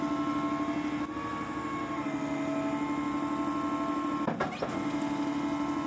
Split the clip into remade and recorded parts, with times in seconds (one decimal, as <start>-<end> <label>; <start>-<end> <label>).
0.0-5.9 recorded